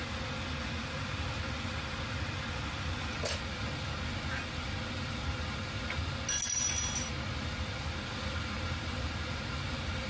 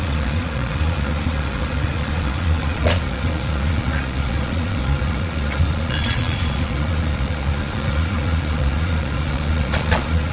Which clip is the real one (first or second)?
first